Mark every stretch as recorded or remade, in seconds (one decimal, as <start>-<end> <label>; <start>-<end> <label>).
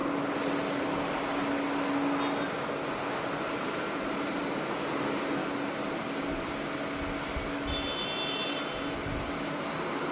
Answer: 0.0-10.1 recorded